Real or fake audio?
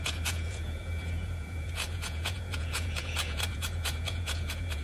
fake